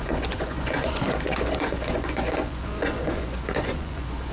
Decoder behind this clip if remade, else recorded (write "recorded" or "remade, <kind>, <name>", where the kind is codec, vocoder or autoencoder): remade, vocoder, Vocos